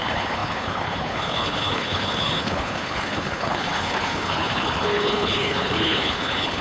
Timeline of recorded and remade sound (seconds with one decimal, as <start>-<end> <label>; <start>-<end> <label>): 0.0-6.6 remade